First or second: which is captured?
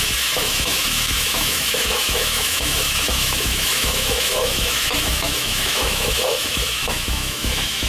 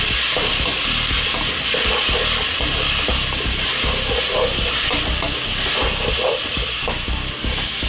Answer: second